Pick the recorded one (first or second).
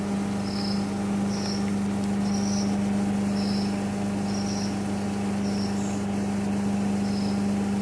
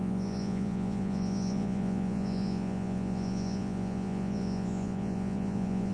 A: first